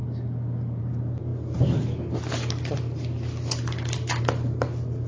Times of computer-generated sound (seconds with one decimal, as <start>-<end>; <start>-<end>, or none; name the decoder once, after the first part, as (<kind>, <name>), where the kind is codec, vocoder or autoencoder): none